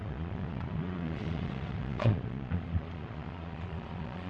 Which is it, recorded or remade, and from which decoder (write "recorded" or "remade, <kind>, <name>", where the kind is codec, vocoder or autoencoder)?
remade, vocoder, Vocos